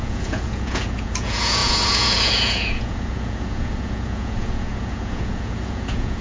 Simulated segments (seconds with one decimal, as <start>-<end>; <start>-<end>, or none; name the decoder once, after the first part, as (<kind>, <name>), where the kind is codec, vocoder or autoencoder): 0.0-6.2 (vocoder, Vocos)